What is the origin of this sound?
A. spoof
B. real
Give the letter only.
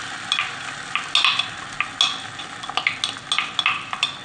B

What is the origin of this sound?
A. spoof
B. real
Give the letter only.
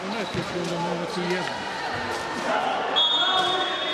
B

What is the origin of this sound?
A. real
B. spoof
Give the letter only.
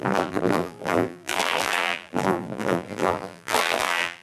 B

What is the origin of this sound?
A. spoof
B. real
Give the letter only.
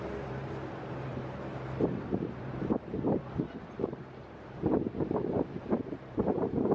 A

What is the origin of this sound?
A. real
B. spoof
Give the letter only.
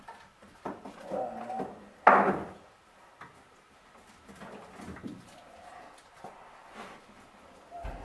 A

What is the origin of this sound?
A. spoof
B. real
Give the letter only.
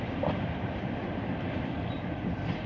B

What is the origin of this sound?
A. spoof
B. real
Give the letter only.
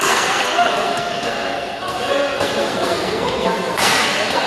A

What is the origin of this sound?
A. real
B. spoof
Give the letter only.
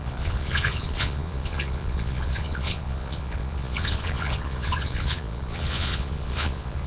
B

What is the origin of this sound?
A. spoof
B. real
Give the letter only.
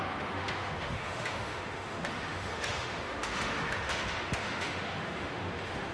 A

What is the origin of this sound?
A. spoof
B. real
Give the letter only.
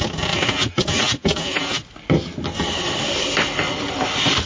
B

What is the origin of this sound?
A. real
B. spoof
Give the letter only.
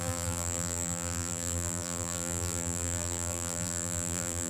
B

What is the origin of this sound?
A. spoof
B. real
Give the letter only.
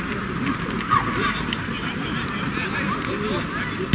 B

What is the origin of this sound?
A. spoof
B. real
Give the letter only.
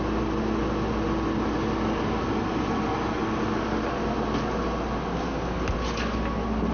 B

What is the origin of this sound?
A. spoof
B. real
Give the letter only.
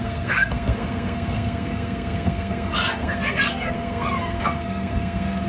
A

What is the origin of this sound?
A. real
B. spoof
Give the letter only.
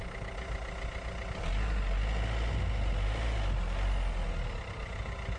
A